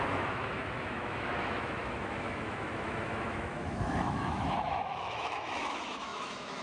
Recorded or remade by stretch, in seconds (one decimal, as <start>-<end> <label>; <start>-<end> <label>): 0.0-6.6 remade